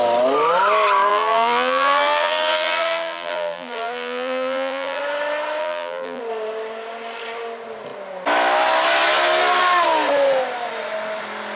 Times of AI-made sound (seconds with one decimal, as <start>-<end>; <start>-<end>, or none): 1.1-5.0; 5.6-6.2